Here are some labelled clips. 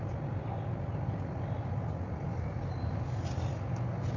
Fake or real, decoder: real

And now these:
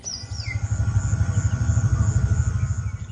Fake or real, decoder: real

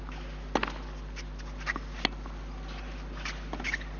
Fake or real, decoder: real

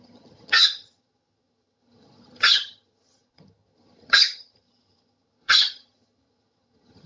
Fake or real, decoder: fake, vocoder, HiFi-GAN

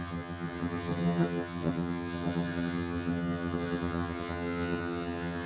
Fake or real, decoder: fake, vocoder, HiFi-GAN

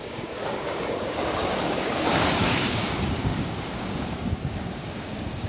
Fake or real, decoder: fake, codec, DAC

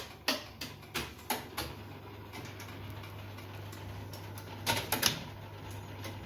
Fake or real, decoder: real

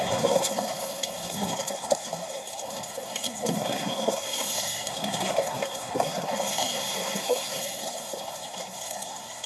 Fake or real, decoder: fake, codec, SNAC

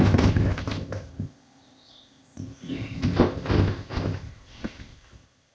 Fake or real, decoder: fake, codec, ZipCodec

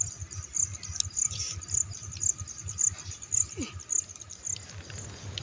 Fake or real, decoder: real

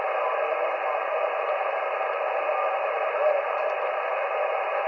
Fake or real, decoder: real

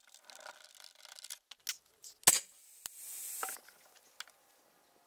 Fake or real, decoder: real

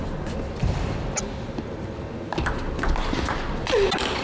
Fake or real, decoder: real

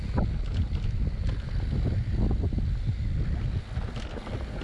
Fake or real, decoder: real